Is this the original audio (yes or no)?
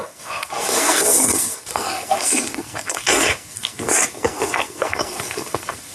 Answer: no